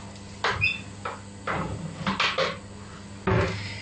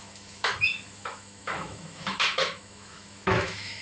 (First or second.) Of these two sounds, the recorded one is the first